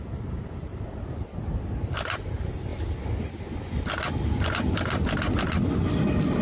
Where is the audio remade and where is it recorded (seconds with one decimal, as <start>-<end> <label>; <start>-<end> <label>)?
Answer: 0.0-6.4 recorded